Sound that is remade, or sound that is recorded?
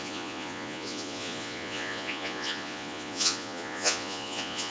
remade